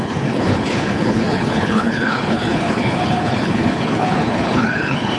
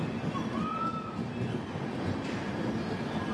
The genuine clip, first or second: second